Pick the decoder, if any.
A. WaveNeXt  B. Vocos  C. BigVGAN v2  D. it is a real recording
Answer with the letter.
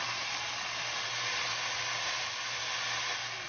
D